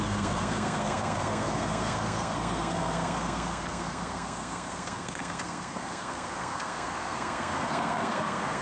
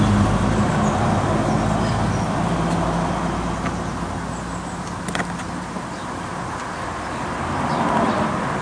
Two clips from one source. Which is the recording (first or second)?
second